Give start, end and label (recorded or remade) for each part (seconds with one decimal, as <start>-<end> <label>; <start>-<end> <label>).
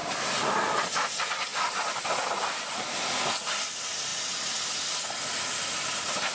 0.0-6.3 recorded